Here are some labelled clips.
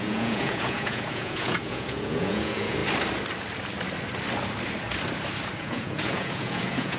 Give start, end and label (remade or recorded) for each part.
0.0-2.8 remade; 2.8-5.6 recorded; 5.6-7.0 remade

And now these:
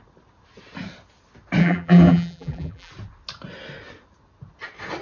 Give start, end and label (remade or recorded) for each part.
0.0-1.6 recorded; 1.6-2.9 remade; 2.9-5.0 recorded

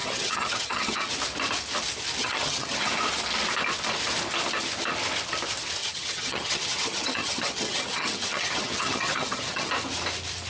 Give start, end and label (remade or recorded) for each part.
0.0-1.1 remade; 1.1-2.2 recorded; 2.2-2.9 remade; 2.9-5.8 recorded; 5.8-9.7 remade; 9.7-10.5 recorded

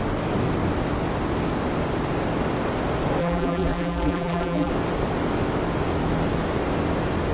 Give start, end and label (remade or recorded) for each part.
0.0-3.2 recorded; 3.2-4.7 remade; 4.7-7.3 recorded

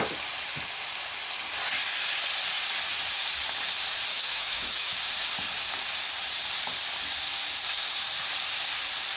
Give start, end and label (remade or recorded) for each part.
0.0-4.1 recorded; 4.1-4.9 remade; 4.9-9.2 recorded

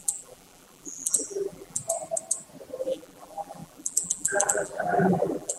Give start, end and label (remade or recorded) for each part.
0.0-1.8 remade; 1.8-2.8 recorded; 2.8-5.6 remade